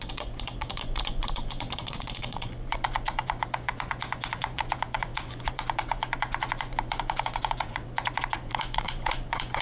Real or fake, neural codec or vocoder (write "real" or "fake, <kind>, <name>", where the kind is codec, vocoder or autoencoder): fake, vocoder, Vocos